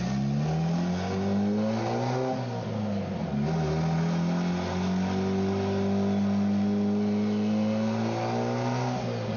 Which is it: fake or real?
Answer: real